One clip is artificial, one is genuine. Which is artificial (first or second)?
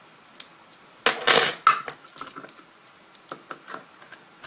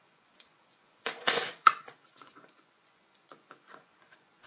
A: second